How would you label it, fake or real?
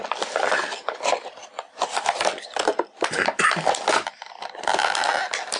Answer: real